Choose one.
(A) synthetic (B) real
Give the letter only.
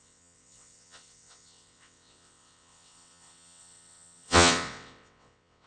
A